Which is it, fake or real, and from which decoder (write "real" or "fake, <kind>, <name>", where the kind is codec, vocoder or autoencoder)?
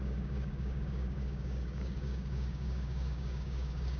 fake, codec, DAC